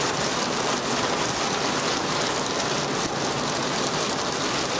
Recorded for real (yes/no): yes